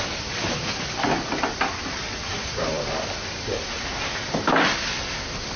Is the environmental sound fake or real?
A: fake